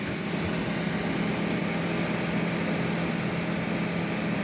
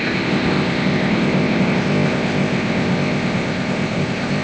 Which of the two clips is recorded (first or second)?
first